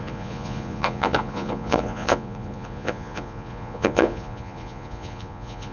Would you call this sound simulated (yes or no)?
yes